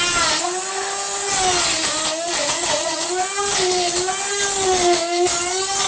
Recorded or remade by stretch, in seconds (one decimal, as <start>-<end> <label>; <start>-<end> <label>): 0.0-2.4 recorded; 2.4-3.1 remade; 3.1-5.9 recorded